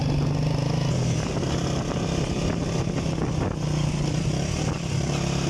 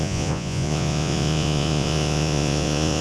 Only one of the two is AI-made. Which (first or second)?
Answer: second